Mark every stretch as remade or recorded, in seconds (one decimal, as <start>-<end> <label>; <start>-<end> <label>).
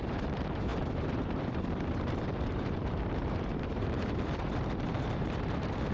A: 0.0-5.9 remade